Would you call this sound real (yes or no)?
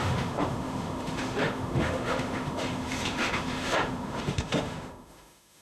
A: no